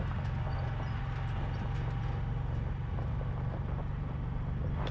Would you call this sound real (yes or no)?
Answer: yes